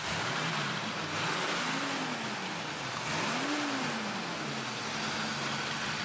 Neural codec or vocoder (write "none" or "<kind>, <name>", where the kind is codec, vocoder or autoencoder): none